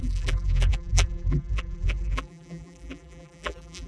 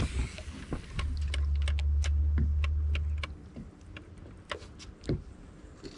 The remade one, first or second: first